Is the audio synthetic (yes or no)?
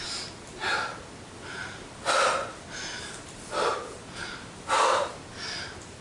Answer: no